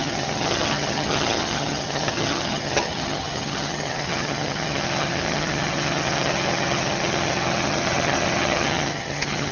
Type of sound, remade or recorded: remade